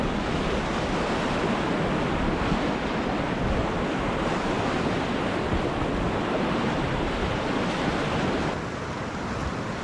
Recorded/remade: recorded